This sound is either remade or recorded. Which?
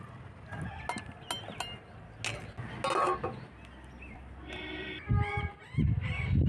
recorded